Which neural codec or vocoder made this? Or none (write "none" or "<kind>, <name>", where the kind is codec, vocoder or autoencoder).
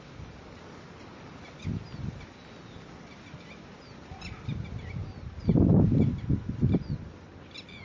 none